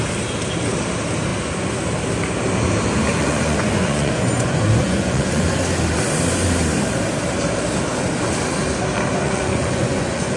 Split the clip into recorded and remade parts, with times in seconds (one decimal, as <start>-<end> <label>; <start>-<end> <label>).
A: 0.0-3.1 recorded; 3.1-5.5 remade; 5.5-9.1 recorded; 9.1-10.4 remade